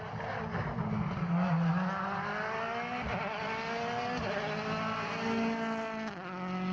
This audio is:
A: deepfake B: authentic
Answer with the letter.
B